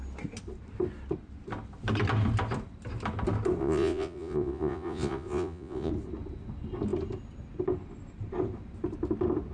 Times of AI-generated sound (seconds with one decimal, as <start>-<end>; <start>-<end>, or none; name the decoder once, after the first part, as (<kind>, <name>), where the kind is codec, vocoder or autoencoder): 3.6-5.9 (vocoder, Vocos)